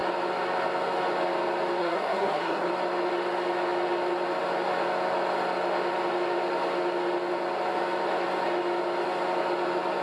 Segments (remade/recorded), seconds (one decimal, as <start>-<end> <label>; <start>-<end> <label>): 0.0-1.8 recorded; 1.8-2.7 remade; 2.7-10.0 recorded